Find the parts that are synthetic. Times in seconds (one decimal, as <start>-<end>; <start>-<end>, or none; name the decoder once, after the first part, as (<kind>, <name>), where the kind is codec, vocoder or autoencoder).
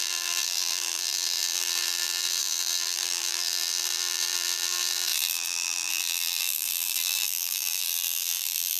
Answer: 0.0-8.8 (vocoder, BigVGAN v2)